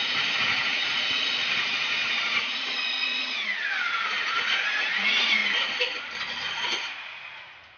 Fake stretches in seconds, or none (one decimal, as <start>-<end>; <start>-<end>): 0.0-5.4; 6.4-7.8